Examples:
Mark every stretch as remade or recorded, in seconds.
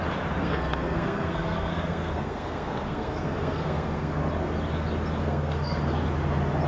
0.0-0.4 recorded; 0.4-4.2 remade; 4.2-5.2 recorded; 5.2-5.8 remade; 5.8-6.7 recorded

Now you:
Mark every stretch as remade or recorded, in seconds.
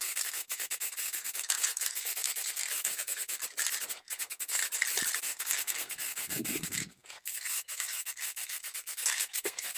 0.0-3.4 remade; 3.4-3.9 recorded; 3.9-4.6 remade; 4.6-5.2 recorded; 5.2-9.8 remade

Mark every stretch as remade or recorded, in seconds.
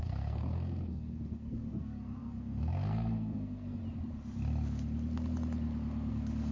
0.0-3.8 remade; 3.8-6.1 recorded; 6.1-6.5 remade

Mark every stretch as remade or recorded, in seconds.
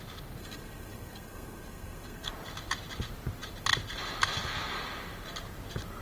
0.0-0.4 recorded; 0.4-2.3 remade; 2.3-6.0 recorded